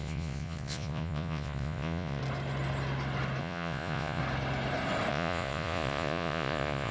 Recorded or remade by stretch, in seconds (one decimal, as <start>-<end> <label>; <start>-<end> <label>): 0.0-2.2 remade; 2.2-3.4 recorded; 3.4-4.2 remade; 4.2-5.1 recorded; 5.1-6.9 remade